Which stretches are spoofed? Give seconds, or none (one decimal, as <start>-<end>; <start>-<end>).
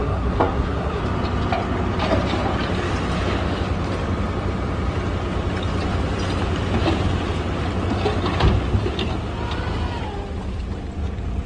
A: 0.0-1.0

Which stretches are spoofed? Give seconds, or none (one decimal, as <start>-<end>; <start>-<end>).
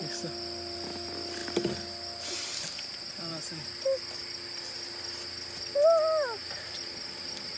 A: none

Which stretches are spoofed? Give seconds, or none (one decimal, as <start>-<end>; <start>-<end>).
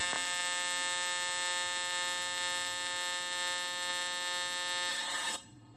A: 4.9-5.8